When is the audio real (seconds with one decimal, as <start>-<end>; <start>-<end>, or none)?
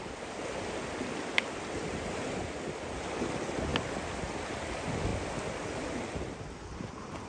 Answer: 0.0-7.3